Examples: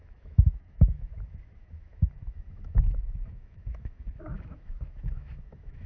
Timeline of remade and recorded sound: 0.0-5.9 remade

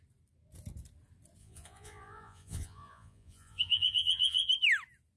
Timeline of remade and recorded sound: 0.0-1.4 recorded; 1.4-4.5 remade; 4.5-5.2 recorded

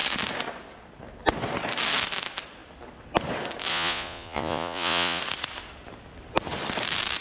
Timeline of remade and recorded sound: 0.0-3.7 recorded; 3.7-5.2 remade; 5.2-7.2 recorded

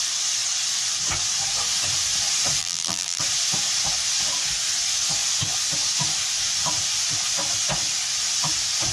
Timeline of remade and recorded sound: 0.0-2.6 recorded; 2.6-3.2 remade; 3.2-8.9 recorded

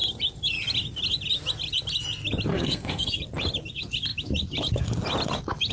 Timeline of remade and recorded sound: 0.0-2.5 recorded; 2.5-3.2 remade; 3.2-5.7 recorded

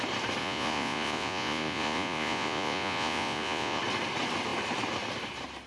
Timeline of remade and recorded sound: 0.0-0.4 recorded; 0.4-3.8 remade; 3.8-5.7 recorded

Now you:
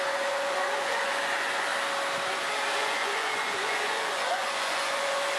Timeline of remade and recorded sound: 0.0-1.7 remade; 1.7-2.8 recorded; 2.8-5.4 remade

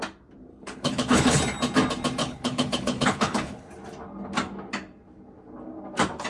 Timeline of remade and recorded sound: 0.0-0.5 recorded; 0.5-1.4 remade; 1.4-2.2 recorded; 2.2-3.7 remade; 3.7-6.3 recorded